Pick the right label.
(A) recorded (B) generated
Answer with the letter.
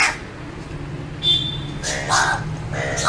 A